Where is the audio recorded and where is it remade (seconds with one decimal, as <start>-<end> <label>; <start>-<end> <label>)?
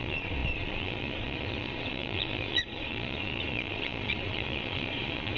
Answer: 0.0-5.4 remade